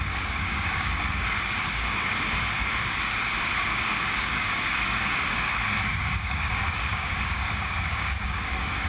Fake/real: fake